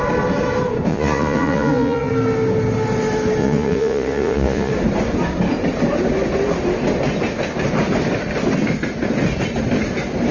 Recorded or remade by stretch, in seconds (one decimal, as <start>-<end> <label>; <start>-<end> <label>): 0.0-0.9 recorded; 0.9-2.1 remade; 2.1-3.4 recorded; 3.4-4.7 remade; 4.7-10.3 recorded